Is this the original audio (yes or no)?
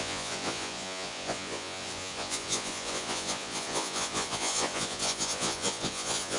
no